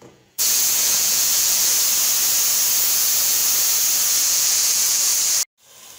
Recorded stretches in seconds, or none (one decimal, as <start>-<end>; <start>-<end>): 1.7-2.8; 3.4-4.3; 5.1-6.0